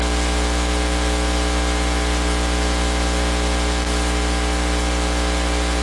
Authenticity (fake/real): real